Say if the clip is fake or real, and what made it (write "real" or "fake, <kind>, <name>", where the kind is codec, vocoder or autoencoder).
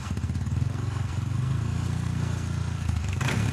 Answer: fake, codec, SNAC